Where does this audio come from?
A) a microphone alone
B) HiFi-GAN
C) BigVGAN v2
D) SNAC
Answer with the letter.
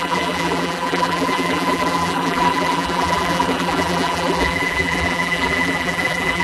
C